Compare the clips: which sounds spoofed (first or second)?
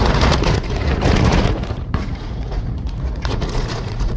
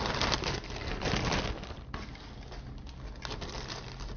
first